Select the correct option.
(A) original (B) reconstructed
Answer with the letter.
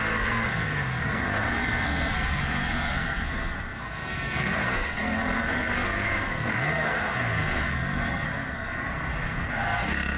B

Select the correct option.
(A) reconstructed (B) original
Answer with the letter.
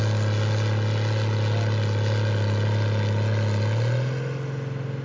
B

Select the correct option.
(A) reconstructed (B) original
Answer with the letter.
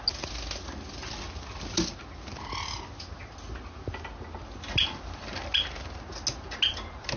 B